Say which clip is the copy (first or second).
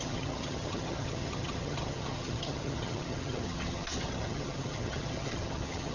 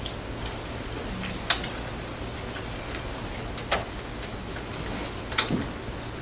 first